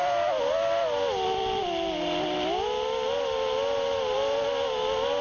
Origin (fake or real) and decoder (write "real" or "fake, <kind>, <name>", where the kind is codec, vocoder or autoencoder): real